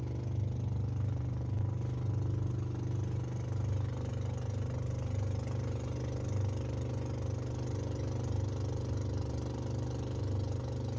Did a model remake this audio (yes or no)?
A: no